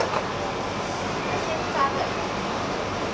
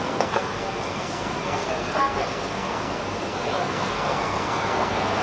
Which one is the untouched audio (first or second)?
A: first